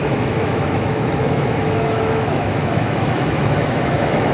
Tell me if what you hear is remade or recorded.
remade